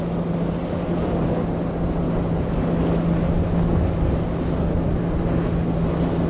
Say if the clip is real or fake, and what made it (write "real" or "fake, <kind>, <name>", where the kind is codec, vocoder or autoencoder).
real